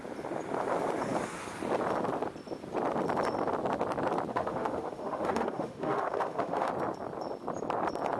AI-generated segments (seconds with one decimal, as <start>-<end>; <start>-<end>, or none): 4.3-6.7